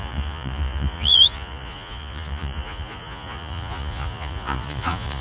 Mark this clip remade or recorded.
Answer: remade